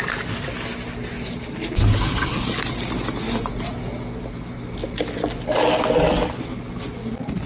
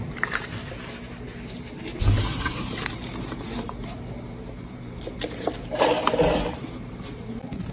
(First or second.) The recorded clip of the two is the first